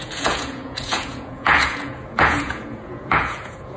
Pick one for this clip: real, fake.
fake